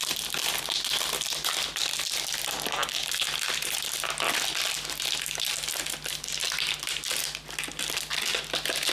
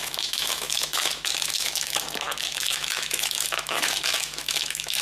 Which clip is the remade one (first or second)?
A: second